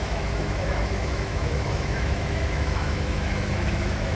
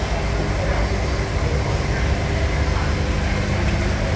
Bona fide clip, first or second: second